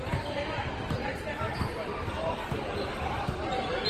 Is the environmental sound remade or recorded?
remade